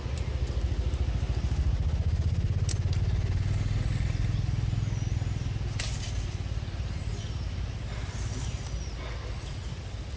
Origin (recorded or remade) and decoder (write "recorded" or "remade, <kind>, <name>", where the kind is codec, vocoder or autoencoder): recorded